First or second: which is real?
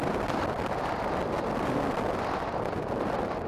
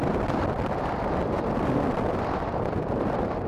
first